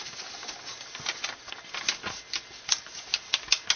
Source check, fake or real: real